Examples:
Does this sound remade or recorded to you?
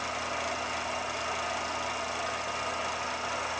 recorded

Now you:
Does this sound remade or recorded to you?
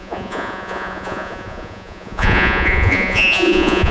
remade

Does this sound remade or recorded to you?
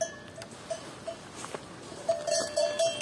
recorded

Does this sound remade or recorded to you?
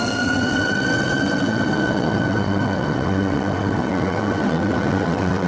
remade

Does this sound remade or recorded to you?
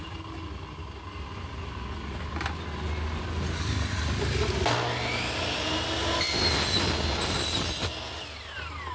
recorded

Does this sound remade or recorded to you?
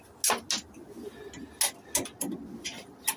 recorded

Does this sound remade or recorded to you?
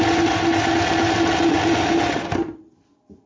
recorded